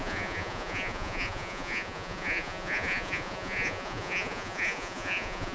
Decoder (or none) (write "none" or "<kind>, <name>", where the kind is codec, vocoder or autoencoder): vocoder, Vocos